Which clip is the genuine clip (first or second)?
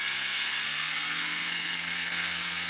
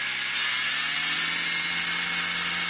second